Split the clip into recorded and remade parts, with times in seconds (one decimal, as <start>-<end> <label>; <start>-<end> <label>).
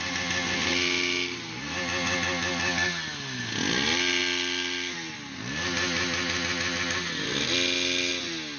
0.0-8.6 recorded